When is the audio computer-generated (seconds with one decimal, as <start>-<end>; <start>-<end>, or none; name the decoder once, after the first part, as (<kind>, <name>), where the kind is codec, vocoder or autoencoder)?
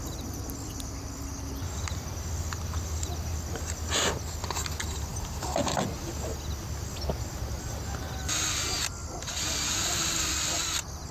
none